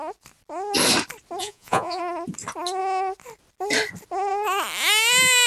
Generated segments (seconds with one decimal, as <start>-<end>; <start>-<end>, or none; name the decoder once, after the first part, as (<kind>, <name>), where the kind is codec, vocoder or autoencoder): 1.4-2.0 (vocoder, Vocos)